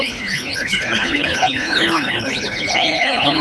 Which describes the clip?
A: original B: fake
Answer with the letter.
B